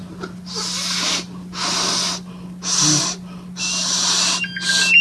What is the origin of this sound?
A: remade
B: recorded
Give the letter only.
B